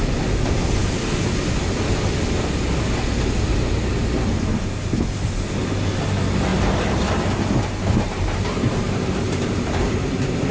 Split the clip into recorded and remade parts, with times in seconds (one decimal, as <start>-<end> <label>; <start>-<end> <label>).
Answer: 0.0-6.5 recorded; 6.5-10.5 remade